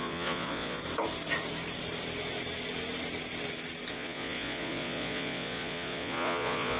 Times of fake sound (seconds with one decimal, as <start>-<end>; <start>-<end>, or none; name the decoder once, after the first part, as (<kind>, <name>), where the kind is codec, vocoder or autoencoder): 0.0-0.8 (vocoder, Vocos); 3.9-6.8